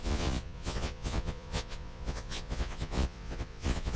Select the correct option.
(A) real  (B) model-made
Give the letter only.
B